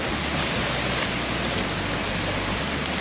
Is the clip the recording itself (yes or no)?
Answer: yes